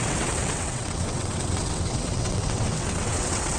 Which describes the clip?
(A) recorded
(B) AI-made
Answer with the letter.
B